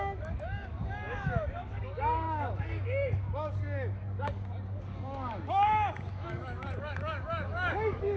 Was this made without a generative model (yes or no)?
no